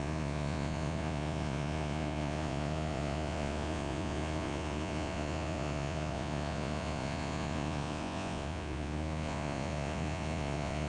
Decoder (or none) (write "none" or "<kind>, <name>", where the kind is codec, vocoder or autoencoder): vocoder, Vocos